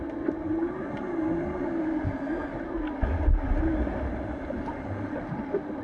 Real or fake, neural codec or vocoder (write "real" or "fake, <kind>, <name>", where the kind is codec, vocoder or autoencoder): real